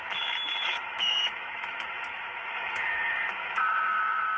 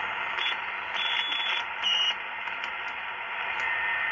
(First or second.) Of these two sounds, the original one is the second